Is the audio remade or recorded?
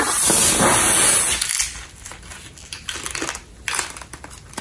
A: recorded